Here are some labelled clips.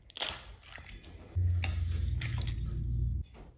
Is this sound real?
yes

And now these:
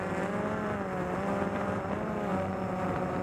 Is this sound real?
yes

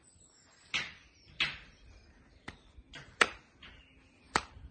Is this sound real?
yes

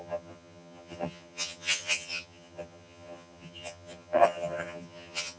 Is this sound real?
no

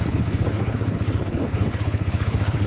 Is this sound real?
no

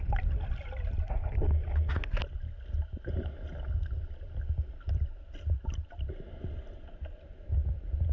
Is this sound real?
yes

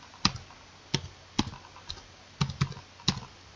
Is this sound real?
yes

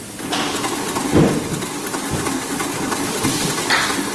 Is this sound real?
yes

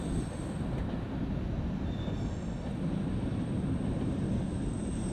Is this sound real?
yes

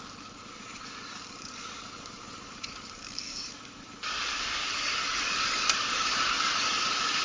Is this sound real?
no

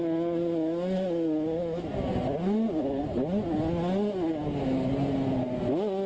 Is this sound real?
yes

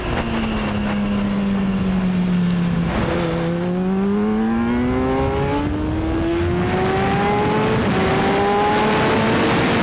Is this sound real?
yes